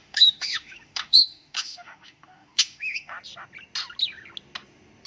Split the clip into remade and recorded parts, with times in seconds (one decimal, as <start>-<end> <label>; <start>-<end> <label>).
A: 0.0-3.1 remade; 3.1-5.1 recorded